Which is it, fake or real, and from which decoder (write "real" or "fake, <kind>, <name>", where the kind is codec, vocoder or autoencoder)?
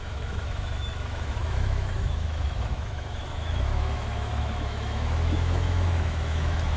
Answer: fake, autoencoder, DAC-VAE